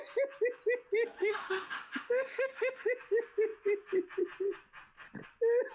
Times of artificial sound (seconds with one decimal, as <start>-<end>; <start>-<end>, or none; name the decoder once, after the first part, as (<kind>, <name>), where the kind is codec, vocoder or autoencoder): 1.2-2.9 (autoencoder, DAC-VAE)